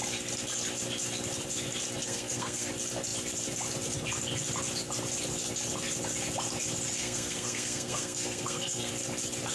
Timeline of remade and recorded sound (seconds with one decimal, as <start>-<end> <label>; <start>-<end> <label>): 0.0-2.0 recorded; 2.0-2.7 remade; 2.7-7.0 recorded; 7.0-8.9 remade; 8.9-9.5 recorded